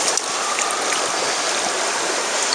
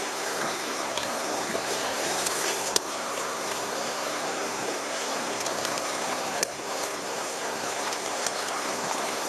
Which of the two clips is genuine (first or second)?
first